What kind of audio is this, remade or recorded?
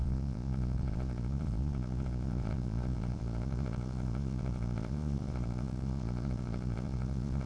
remade